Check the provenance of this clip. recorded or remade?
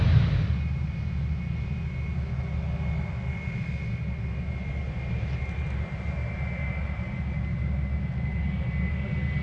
recorded